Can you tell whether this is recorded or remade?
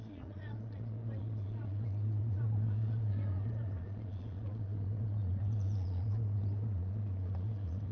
remade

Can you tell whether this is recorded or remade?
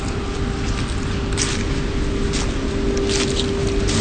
recorded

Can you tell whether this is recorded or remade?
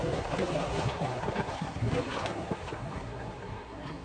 remade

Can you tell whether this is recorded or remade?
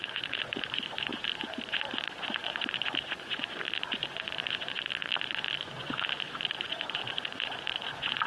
remade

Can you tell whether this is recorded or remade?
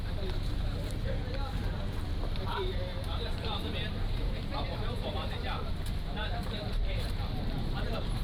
remade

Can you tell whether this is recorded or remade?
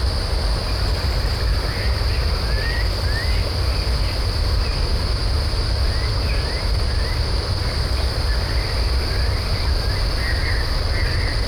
recorded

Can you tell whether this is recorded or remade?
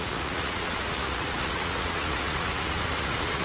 remade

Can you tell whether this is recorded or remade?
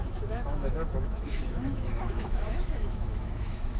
remade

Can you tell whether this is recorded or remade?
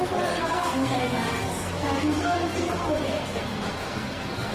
remade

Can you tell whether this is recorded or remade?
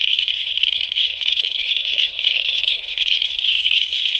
remade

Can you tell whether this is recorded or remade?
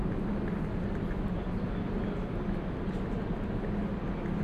recorded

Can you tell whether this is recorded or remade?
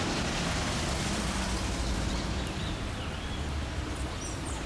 recorded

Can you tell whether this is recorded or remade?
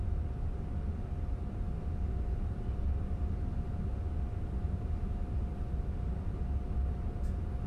recorded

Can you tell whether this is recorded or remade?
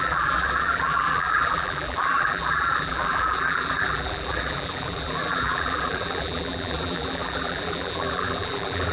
remade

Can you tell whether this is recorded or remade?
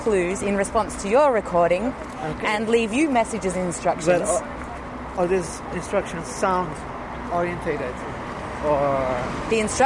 recorded